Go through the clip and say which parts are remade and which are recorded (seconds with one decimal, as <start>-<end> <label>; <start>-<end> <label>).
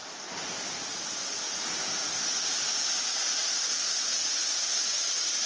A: 0.0-5.5 recorded